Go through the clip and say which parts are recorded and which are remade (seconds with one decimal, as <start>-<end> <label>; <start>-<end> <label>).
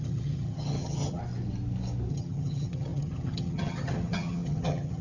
0.0-1.2 remade; 1.2-2.1 recorded; 2.1-5.0 remade